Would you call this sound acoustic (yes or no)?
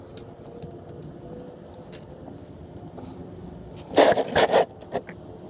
yes